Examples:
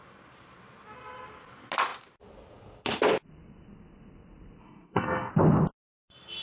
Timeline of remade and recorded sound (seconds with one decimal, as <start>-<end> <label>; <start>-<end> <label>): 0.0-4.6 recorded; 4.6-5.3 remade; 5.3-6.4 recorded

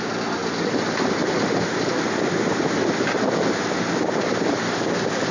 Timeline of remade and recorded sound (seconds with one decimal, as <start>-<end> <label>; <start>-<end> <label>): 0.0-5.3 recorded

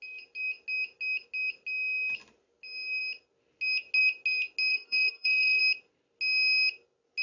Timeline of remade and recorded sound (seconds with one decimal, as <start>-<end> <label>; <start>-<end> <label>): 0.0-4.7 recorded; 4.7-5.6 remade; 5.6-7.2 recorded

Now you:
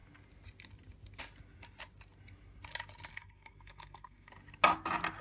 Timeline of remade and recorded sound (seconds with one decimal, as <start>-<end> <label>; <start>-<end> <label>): 0.0-3.1 recorded; 3.1-4.3 remade; 4.3-5.2 recorded

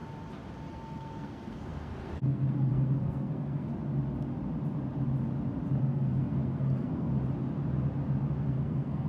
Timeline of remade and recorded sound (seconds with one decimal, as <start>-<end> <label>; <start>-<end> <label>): 0.0-0.7 recorded; 0.7-3.7 remade; 3.7-5.8 recorded; 5.8-7.1 remade; 7.1-8.4 recorded; 8.4-9.1 remade

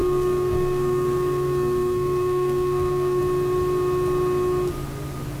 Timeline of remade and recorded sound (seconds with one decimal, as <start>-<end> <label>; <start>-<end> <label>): 0.0-3.2 remade; 3.2-5.4 recorded